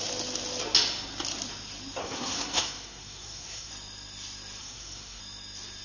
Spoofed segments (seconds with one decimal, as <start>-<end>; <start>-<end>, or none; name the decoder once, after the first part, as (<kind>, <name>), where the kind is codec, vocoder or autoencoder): 2.0-3.7 (codec, SNAC); 4.6-5.2